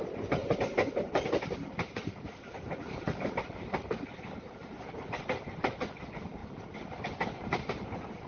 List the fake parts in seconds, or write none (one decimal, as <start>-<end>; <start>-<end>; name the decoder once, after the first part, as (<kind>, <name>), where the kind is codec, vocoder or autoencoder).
0.0-6.4 (vocoder, BigVGAN v2); 7.5-8.3